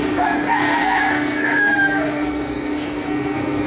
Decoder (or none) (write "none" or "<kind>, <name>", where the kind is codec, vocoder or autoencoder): codec, SNAC